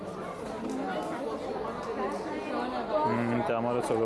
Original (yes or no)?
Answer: yes